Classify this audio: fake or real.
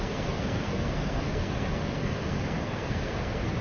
fake